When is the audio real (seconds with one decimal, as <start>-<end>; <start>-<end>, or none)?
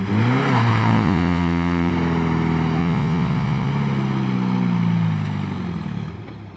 0.0-0.7; 1.9-2.8; 3.7-6.6